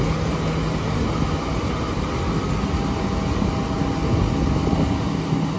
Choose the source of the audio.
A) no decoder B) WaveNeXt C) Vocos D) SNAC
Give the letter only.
A